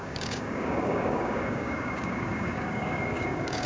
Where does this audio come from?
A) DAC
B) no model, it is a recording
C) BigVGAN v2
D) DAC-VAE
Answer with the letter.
A